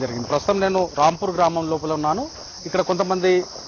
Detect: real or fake real